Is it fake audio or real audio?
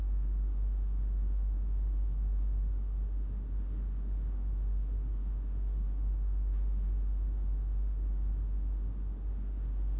fake